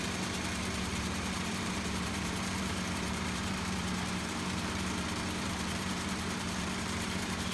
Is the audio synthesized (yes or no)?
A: yes